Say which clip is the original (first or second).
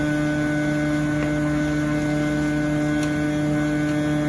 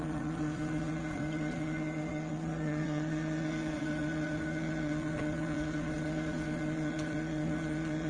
first